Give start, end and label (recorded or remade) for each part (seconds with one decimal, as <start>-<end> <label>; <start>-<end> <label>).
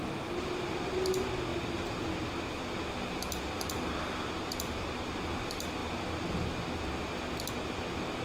0.0-8.2 recorded